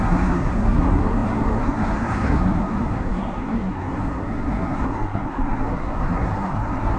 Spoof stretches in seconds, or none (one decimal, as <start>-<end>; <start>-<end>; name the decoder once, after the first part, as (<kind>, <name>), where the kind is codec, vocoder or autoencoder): 0.0-7.0 (codec, SNAC)